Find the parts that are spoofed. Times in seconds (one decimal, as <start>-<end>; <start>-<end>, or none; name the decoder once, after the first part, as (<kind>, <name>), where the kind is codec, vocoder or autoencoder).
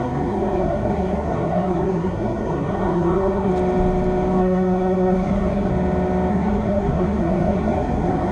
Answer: 0.0-3.5 (codec, SNAC); 4.4-5.7; 6.3-8.3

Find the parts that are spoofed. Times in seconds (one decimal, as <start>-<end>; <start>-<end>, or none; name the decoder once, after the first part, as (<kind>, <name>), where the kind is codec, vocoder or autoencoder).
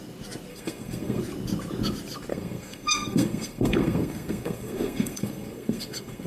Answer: 0.5-1.2 (codec, SNAC); 2.3-6.3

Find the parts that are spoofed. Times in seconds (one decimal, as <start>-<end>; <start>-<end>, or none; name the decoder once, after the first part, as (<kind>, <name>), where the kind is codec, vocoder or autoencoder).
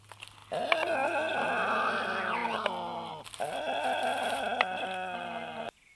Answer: none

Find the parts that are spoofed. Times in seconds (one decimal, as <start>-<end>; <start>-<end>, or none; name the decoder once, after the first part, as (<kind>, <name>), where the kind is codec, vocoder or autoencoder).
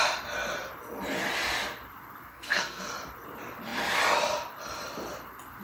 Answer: 2.3-2.9 (codec, SNAC)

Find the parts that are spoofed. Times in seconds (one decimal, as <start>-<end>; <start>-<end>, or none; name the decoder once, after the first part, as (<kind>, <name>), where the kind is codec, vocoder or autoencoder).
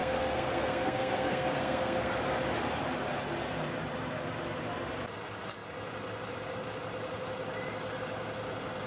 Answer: 0.0-2.1 (codec, SNAC)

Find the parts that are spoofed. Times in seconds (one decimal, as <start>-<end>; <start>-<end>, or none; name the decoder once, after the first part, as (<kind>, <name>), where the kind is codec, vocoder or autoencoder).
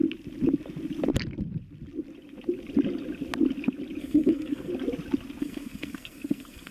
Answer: 4.0-4.7 (codec, SNAC); 5.4-6.7